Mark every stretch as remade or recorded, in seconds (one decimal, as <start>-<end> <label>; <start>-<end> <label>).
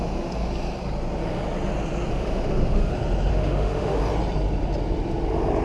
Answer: 0.0-2.1 recorded; 2.1-2.9 remade; 2.9-3.3 recorded; 3.3-4.0 remade; 4.0-5.6 recorded